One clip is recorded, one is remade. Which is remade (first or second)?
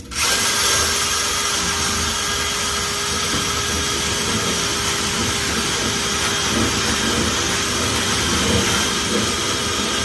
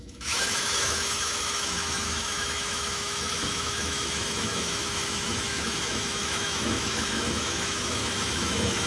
second